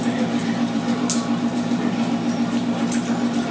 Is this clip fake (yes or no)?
yes